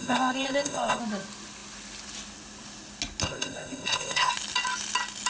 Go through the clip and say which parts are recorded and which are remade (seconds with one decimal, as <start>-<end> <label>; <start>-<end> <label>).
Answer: 0.0-1.0 remade; 1.0-3.2 recorded; 3.2-4.3 remade; 4.3-5.3 recorded